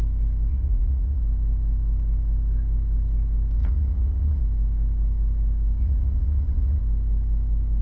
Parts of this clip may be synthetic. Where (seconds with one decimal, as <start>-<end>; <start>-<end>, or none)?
0.5-1.2; 3.6-4.4; 5.8-6.8